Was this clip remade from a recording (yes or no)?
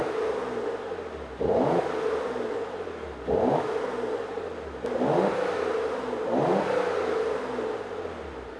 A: no